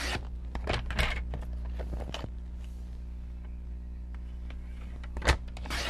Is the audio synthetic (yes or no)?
no